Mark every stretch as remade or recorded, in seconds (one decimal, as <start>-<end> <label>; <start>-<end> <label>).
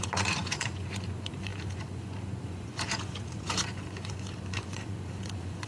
0.0-5.7 remade